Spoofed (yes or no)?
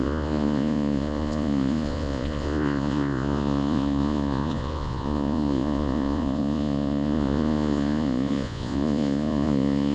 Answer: yes